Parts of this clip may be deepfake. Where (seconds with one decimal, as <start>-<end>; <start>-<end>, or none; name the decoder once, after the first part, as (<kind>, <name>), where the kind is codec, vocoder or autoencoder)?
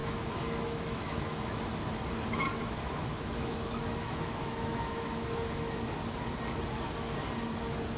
0.0-1.7 (autoencoder, DAC-VAE); 2.5-5.9